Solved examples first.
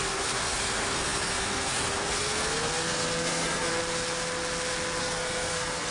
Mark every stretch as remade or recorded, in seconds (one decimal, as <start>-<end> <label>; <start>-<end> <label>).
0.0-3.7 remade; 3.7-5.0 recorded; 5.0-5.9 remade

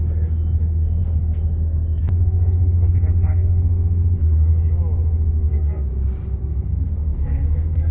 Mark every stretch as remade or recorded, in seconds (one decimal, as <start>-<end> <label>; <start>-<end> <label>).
0.0-4.5 remade; 4.5-5.3 recorded; 5.3-5.9 remade; 5.9-6.5 recorded; 6.5-7.9 remade

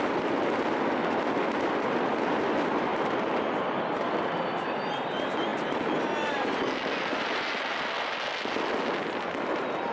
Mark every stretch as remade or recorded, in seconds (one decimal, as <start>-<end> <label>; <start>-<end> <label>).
0.0-9.9 recorded

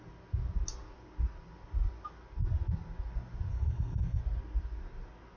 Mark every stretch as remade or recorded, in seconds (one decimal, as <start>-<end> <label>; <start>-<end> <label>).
0.0-3.5 recorded; 3.5-4.2 remade; 4.2-5.4 recorded